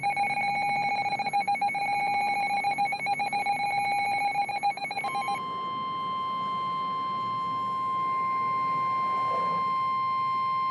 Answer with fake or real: real